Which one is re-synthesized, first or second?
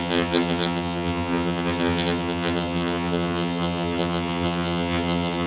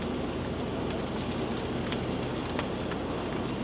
first